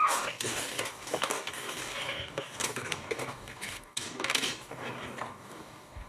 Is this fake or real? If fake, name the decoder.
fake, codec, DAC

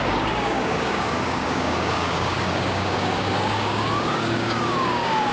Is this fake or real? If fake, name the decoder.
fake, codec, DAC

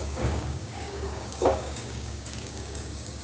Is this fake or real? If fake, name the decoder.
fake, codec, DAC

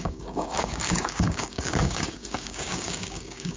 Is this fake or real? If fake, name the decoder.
fake, codec, DAC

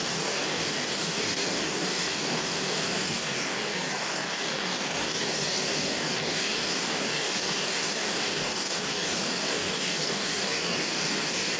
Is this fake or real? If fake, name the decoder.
fake, codec, DAC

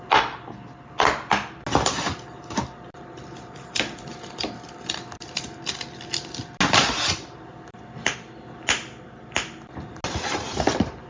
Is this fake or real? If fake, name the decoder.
real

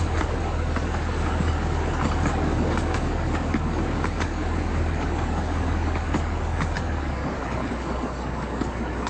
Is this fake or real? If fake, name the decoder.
fake, codec, DAC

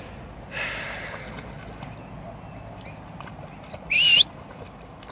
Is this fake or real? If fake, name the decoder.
real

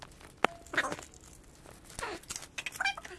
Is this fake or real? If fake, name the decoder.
real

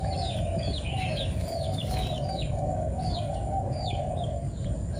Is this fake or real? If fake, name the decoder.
fake, codec, DAC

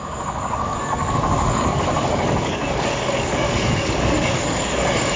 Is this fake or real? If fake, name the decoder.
fake, codec, DAC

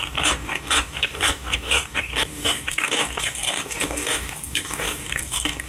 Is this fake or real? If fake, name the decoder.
fake, codec, DAC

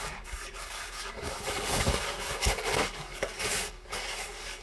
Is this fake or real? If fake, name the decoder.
fake, codec, DAC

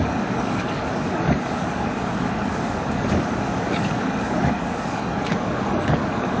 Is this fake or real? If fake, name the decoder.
fake, codec, DAC